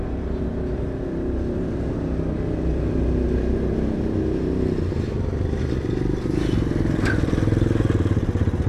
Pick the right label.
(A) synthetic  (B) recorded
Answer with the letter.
B